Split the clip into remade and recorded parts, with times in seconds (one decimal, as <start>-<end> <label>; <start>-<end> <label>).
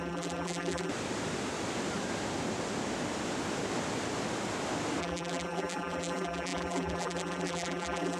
0.0-0.9 remade; 0.9-5.0 recorded; 5.0-8.2 remade